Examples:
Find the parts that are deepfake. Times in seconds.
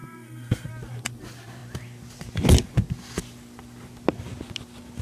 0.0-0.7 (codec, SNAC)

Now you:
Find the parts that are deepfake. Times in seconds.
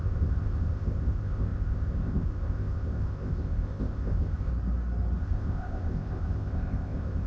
0.0-4.5 (codec, ZipCodec); 5.2-7.3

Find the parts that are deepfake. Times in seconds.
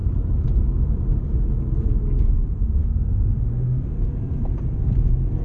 2.8-3.9 (autoencoder, DAC-VAE)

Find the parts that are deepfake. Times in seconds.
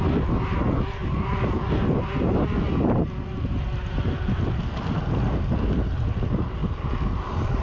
none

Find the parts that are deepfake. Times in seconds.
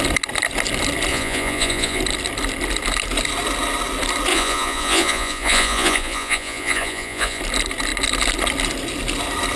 1.1-2.0 (vocoder, Vocos); 4.3-7.4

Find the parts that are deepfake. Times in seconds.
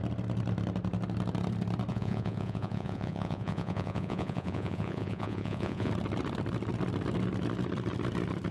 1.9-5.9 (vocoder, Vocos)